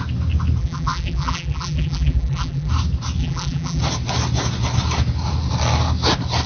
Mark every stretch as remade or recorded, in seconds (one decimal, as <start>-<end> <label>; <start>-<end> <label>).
0.0-0.6 recorded; 0.6-2.7 remade; 2.7-3.2 recorded; 3.2-3.8 remade; 3.8-6.5 recorded